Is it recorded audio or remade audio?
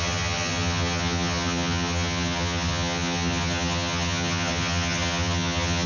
remade